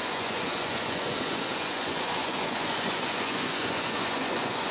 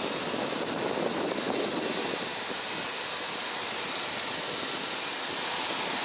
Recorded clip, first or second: second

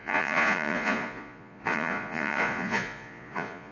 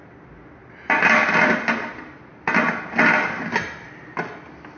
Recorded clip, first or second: second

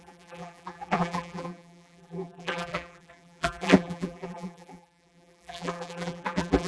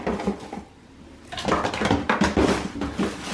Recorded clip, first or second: second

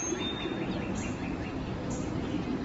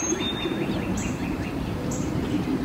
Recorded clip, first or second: first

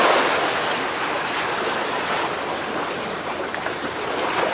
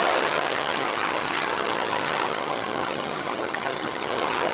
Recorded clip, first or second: first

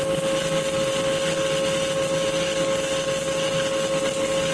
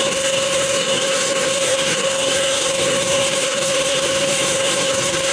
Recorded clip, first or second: first